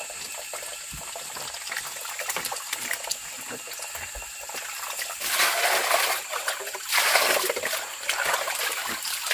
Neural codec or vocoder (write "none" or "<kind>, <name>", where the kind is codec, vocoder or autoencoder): none